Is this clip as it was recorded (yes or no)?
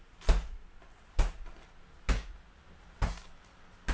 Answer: yes